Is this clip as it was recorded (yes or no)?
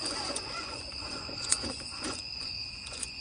no